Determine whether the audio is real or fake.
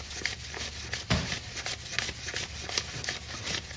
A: real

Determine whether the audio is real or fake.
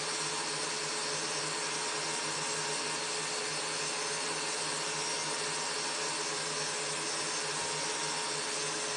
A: real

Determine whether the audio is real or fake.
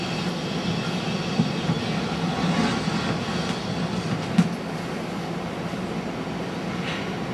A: real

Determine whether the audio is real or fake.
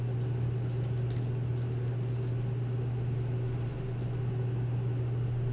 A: real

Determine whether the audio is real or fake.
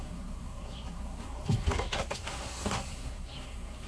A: fake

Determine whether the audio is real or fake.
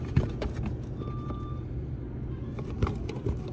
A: real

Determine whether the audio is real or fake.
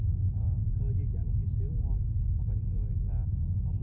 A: real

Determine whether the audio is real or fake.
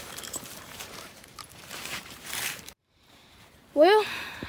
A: fake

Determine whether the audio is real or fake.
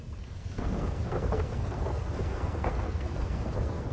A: fake